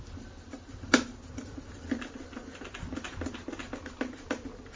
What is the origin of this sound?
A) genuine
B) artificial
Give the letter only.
B